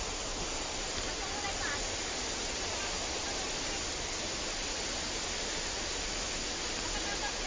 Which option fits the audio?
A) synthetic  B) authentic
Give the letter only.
B